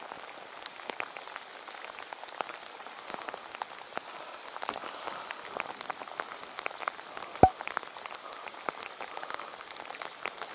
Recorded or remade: recorded